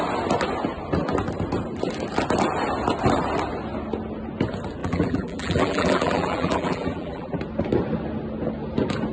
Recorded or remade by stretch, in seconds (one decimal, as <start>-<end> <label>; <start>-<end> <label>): 0.0-4.8 recorded; 4.8-7.4 remade; 7.4-9.1 recorded